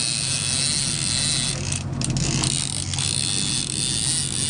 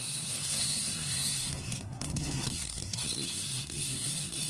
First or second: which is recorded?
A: first